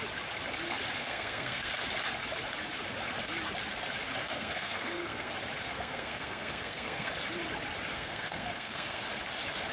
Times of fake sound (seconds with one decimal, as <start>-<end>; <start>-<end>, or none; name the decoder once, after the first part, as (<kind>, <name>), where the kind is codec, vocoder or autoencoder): 1.0-1.7 (codec, SNAC); 4.2-5.3; 5.7-7.1; 7.9-9.0

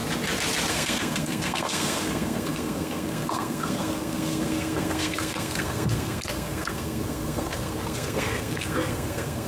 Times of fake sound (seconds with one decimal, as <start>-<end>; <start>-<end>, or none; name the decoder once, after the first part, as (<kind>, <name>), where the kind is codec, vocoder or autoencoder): 0.7-9.5 (codec, SNAC)

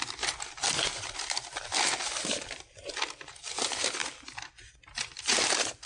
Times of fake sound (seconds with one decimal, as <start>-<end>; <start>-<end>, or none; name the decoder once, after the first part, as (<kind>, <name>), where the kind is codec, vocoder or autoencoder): none

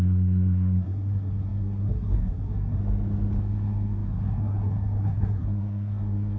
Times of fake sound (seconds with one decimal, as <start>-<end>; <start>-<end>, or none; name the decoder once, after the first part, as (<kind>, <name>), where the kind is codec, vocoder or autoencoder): 0.0-2.8 (codec, SNAC); 3.4-6.4

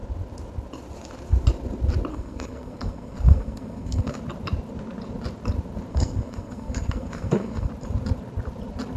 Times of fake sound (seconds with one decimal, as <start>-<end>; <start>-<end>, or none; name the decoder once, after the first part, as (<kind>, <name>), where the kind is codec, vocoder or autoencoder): 2.1-4.2 (codec, SNAC); 5.9-7.7

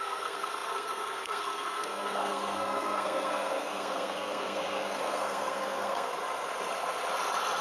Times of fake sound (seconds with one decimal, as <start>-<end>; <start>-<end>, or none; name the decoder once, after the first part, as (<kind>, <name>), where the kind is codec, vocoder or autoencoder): 0.0-6.1 (codec, SNAC)

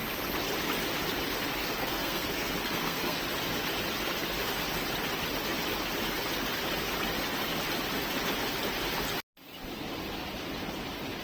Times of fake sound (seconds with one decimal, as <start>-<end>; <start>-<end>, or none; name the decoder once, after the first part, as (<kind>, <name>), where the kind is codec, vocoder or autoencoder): 1.6-3.2 (codec, SNAC)